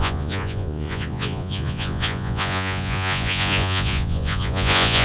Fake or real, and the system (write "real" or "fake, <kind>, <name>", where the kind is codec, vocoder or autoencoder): fake, vocoder, Vocos